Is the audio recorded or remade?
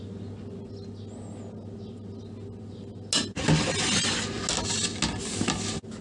recorded